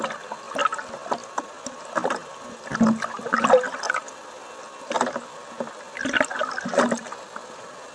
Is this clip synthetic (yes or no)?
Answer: no